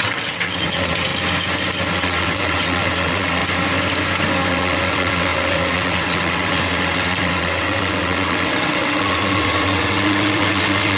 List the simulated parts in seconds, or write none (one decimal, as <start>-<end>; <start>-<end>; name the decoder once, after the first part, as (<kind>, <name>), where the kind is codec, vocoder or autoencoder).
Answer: 0.0-1.1 (vocoder, WaveNeXt); 1.9-3.4; 4.5-11.0